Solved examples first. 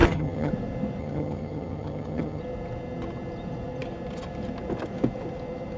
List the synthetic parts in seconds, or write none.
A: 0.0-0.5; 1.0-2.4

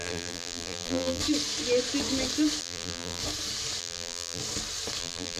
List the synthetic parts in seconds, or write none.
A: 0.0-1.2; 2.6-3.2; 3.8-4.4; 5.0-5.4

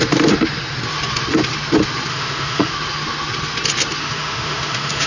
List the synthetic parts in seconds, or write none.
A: 2.1-2.7; 4.0-5.1